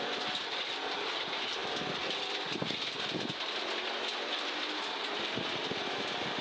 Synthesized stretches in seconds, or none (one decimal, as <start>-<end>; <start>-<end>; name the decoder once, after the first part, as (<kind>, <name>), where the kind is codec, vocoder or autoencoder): none